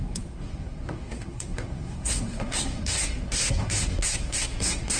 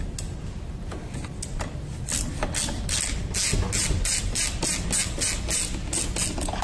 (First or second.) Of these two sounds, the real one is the second